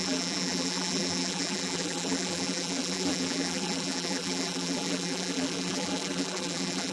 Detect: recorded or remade remade